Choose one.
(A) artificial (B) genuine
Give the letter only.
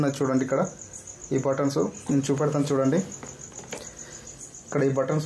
B